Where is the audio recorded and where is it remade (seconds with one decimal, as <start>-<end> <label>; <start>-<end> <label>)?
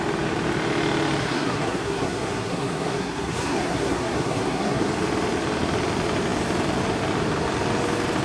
0.0-1.2 recorded; 1.2-4.9 remade; 4.9-8.2 recorded